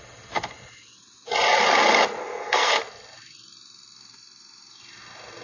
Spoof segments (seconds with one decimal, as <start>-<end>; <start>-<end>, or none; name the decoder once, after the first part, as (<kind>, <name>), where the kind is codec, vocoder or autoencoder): 2.2-2.8 (codec, SNAC)